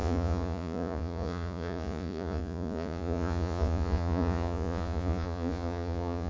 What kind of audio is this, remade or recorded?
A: remade